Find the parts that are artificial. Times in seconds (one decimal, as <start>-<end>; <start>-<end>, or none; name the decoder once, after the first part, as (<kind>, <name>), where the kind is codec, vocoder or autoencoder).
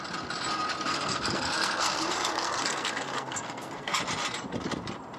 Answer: 0.9-4.0 (codec, SNAC)